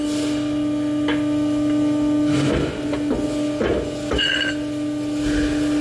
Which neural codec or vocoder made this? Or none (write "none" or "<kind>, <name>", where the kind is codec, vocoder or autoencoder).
none